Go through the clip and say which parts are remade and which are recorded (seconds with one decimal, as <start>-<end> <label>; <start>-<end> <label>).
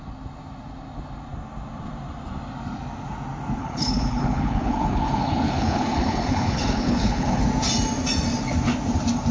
0.0-3.6 recorded; 3.6-7.4 remade; 7.4-9.3 recorded